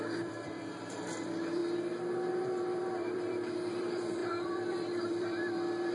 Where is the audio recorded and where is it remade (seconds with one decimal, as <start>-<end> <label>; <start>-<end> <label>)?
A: 0.0-1.6 remade; 1.6-2.4 recorded; 2.4-5.9 remade